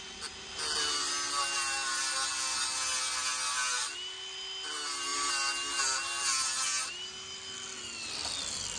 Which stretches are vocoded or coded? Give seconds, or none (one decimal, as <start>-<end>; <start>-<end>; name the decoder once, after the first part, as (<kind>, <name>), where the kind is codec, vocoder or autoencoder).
none